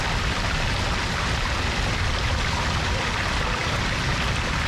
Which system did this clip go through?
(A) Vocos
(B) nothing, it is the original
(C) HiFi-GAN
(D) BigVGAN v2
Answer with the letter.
B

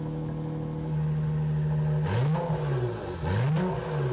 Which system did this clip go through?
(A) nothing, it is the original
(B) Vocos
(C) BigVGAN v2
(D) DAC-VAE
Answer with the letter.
A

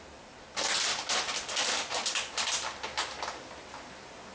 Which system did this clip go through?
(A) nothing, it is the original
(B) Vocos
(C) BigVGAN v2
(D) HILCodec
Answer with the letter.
A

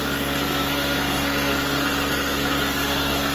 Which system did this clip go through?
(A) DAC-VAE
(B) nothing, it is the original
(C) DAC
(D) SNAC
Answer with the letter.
D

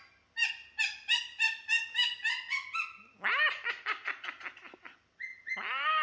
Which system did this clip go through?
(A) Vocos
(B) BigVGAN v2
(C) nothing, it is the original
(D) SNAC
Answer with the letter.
C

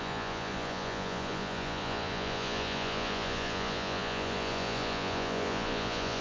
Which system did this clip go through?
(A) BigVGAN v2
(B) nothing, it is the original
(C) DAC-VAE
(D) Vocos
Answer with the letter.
D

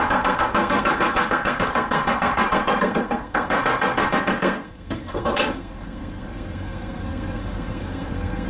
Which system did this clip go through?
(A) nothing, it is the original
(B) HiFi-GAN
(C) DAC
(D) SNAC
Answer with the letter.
D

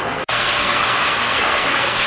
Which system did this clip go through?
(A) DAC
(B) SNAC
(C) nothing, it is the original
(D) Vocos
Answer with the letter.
B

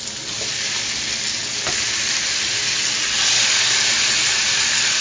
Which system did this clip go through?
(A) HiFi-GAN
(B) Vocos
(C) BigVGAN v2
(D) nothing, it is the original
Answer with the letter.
D